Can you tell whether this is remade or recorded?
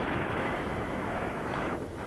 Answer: remade